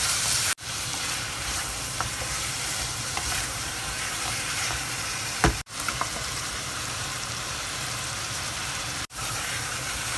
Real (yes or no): no